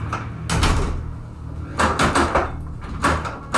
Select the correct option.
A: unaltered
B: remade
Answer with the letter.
A